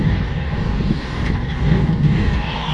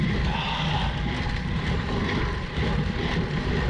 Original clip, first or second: second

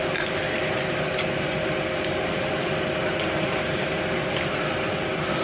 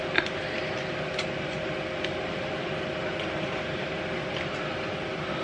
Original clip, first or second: first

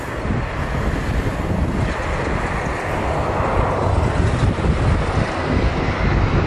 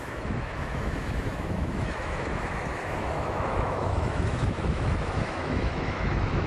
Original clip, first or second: first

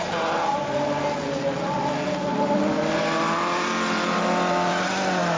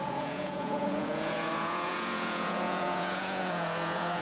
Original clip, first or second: first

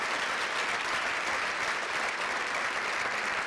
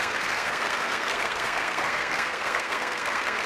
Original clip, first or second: first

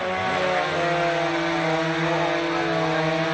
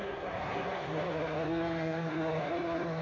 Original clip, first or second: first